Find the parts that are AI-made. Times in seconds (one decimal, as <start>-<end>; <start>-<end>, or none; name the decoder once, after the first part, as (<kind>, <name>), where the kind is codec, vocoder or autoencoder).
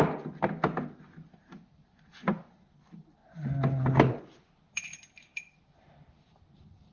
none